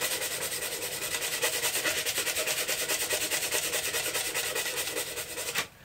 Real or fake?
real